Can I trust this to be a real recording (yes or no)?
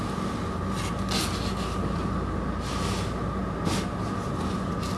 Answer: yes